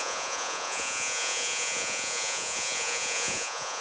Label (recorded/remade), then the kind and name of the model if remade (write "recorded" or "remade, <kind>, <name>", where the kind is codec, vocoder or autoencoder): remade, vocoder, Vocos